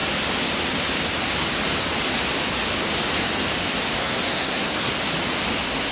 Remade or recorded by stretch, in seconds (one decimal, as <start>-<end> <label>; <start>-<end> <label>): 0.0-4.0 recorded; 4.0-4.9 remade; 4.9-5.9 recorded

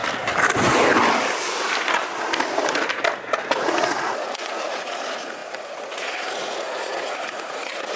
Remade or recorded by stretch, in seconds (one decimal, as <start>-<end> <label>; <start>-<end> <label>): 0.0-3.5 recorded; 3.5-8.0 remade

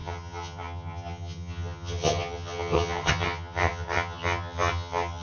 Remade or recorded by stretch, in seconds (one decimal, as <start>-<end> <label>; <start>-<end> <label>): 0.0-5.2 remade